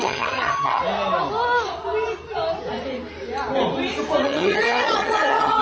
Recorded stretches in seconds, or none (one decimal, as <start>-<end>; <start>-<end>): 0.8-4.2